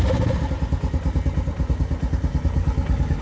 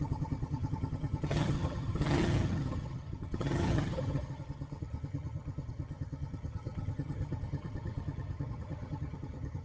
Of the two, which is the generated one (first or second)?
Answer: second